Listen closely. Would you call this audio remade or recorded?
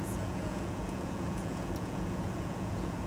remade